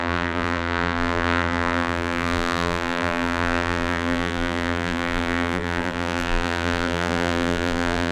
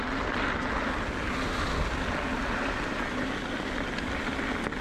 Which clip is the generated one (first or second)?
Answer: first